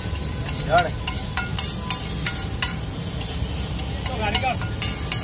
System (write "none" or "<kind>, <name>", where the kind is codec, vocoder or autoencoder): none